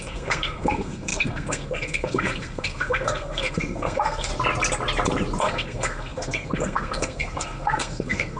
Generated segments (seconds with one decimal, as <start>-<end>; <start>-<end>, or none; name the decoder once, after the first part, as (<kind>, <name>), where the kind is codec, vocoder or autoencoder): 0.0-4.3 (codec, SNAC); 5.4-8.4